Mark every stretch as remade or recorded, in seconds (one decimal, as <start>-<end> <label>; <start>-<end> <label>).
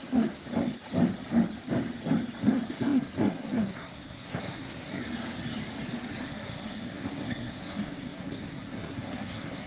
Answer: 0.0-0.4 remade; 0.4-2.4 recorded; 2.4-5.0 remade; 5.0-6.2 recorded; 6.2-9.7 remade